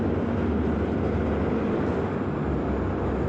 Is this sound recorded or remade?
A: recorded